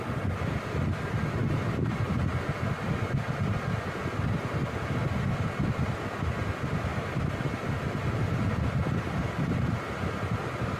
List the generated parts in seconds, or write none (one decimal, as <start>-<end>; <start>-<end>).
6.9-7.5